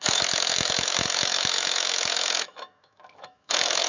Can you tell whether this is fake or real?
fake